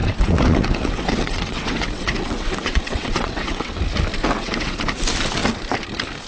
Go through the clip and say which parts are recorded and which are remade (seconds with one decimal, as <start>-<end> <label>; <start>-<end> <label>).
0.0-3.8 remade; 3.8-4.2 recorded; 4.2-4.8 remade; 4.8-6.3 recorded